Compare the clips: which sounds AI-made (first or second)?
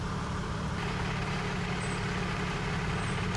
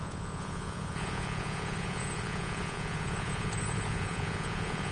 second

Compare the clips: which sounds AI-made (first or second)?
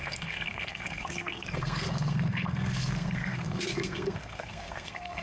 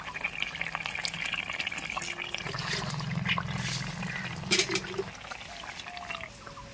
first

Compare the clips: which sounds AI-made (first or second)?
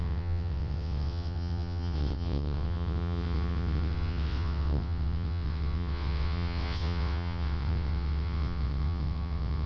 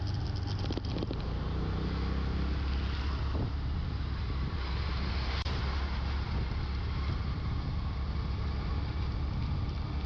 first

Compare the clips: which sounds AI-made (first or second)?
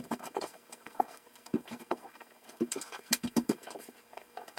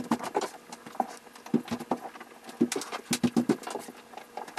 first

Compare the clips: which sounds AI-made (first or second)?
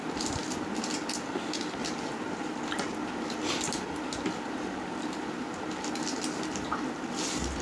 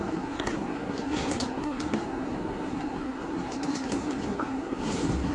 second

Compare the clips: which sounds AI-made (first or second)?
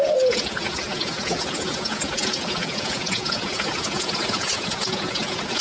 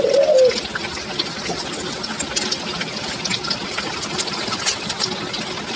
first